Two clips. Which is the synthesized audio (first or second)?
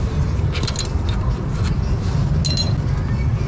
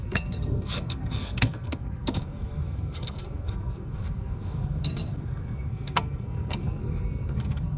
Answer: second